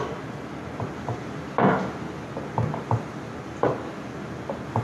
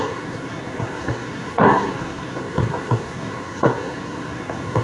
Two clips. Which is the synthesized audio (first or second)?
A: second